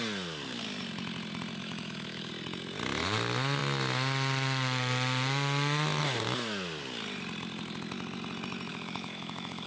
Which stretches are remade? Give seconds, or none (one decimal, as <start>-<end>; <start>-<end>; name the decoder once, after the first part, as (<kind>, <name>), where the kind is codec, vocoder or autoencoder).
1.6-2.3 (autoencoder, DAC-VAE); 8.7-9.7